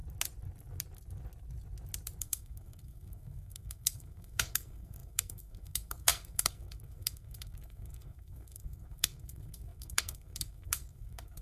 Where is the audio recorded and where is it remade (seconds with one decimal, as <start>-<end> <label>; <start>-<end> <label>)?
0.0-2.2 recorded; 2.2-11.4 remade